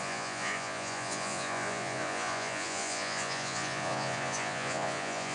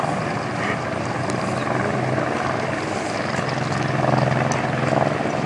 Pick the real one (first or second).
second